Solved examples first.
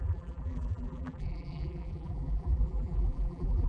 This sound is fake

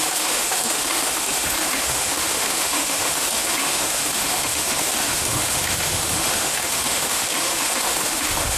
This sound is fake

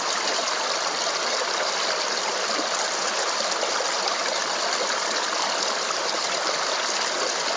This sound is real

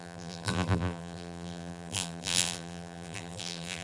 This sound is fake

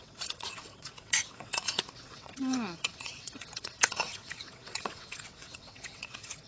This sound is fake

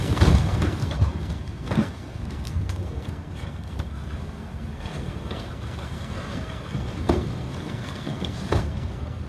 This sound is fake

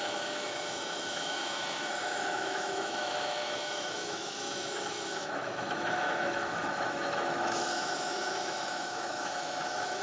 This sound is fake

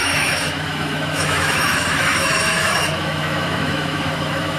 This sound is fake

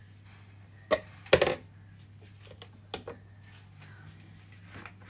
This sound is real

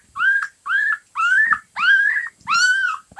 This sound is fake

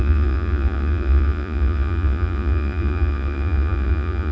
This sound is fake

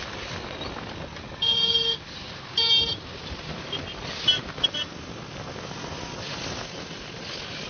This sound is real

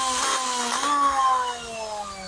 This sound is real